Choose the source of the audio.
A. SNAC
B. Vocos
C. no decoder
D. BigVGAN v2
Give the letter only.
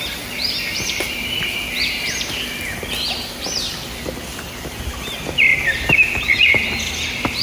D